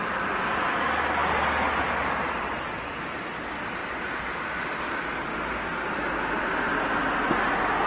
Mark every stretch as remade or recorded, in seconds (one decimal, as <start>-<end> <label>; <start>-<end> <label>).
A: 0.0-7.9 recorded